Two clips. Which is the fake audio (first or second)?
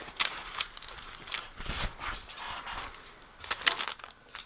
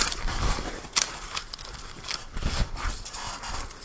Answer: second